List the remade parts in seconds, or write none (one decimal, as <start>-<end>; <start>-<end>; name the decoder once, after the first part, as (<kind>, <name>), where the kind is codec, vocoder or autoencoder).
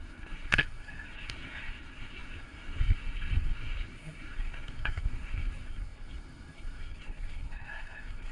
0.0-8.3 (codec, SNAC)